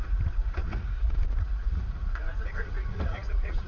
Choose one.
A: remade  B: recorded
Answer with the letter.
A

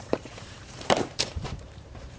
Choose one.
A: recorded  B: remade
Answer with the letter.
B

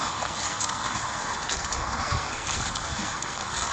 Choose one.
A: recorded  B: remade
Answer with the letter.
B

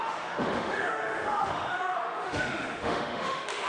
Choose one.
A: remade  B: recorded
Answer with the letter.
A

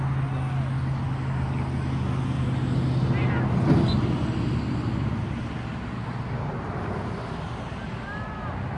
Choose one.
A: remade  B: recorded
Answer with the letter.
B